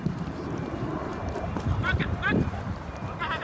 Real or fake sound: fake